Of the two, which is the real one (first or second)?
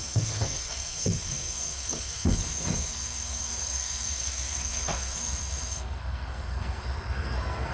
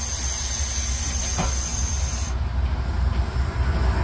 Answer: second